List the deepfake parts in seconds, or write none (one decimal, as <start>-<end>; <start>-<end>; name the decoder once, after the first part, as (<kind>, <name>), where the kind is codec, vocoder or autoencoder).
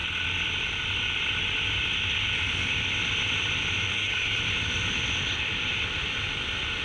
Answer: 3.9-4.4 (codec, DAC)